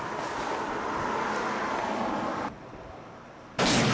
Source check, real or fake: real